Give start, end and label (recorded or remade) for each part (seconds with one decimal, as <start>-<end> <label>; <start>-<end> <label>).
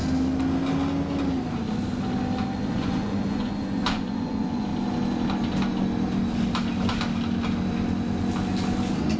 0.0-2.7 recorded; 2.7-4.7 remade; 4.7-9.2 recorded